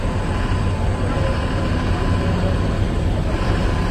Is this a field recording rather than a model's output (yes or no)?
yes